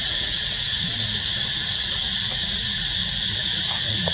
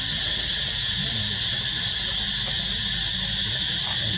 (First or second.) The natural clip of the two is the second